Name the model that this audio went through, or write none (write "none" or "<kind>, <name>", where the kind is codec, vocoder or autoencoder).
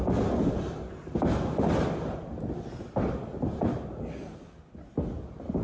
none